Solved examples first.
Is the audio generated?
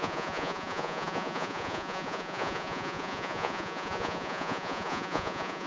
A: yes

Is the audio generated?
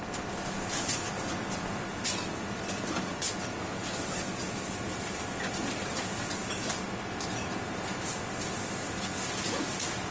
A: no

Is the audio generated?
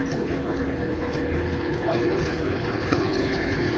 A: yes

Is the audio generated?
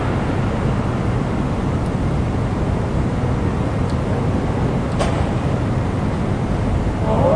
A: no